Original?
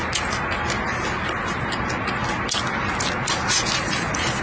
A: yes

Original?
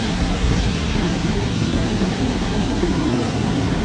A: no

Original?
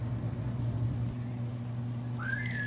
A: yes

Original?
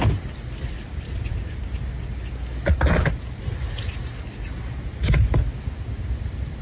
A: yes